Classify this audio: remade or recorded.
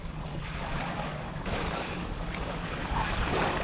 remade